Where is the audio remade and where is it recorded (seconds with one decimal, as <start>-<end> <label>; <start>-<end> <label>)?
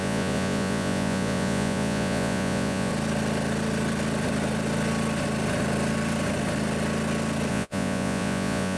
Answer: 0.0-2.9 remade; 2.9-7.5 recorded; 7.5-8.8 remade